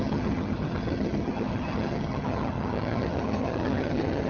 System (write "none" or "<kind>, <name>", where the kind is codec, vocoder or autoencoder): vocoder, HiFi-GAN